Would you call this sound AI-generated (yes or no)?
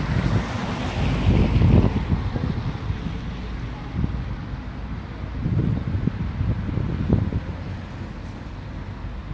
no